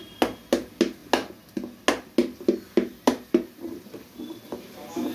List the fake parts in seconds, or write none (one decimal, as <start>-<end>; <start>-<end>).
none